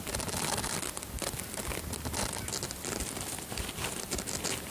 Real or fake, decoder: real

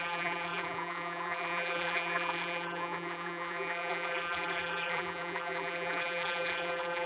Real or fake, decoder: fake, vocoder, BigVGAN v2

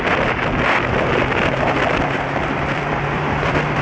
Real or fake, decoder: fake, vocoder, BigVGAN v2